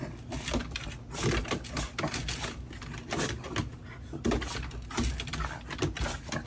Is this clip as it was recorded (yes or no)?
yes